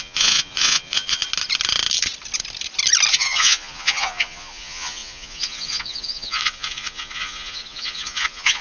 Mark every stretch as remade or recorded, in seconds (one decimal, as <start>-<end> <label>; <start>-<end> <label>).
0.0-1.2 remade; 1.2-3.1 recorded; 3.1-8.6 remade

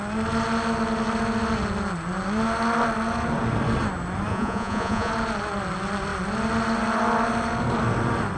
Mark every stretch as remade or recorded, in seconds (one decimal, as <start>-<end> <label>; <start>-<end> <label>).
0.0-4.3 recorded; 4.3-5.1 remade; 5.1-8.4 recorded